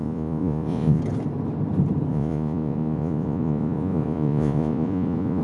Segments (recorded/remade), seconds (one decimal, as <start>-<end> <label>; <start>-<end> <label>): 0.0-1.0 remade; 1.0-2.1 recorded; 2.1-5.4 remade

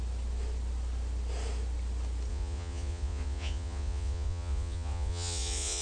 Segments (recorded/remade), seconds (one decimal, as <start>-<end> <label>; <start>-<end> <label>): 0.0-2.3 recorded; 2.3-5.8 remade

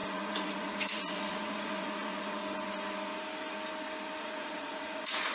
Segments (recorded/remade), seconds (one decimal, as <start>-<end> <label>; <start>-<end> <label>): 0.0-2.4 remade; 2.4-4.2 recorded; 4.2-5.3 remade